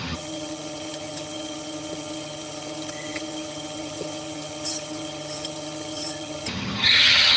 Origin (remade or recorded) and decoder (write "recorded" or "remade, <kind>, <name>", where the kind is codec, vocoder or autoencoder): remade, vocoder, HiFi-GAN